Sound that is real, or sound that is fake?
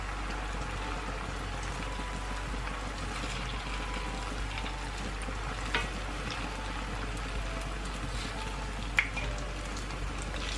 real